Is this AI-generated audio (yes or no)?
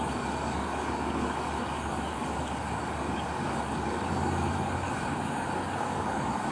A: yes